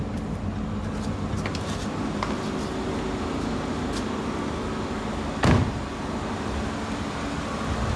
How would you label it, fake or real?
real